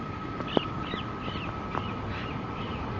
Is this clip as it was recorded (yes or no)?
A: yes